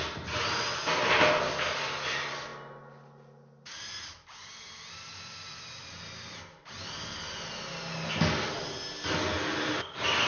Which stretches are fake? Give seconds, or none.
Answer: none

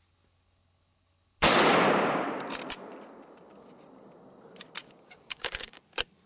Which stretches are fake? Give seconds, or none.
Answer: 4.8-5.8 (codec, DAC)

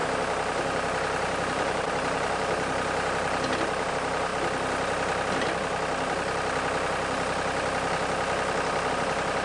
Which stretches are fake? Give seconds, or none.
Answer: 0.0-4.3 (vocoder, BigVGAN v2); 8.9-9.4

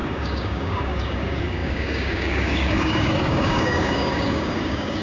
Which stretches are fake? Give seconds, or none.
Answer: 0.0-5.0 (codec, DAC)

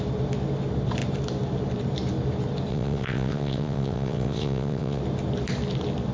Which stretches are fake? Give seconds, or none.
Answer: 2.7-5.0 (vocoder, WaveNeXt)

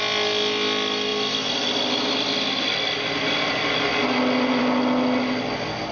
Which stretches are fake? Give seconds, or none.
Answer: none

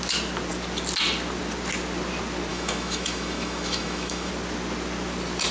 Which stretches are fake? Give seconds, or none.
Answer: 2.5-4.3 (autoencoder, DAC-VAE)